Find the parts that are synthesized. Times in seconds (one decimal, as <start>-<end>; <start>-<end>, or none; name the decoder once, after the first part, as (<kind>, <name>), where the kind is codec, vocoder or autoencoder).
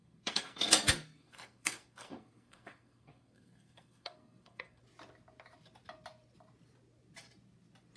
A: 0.0-4.8 (codec, SNAC)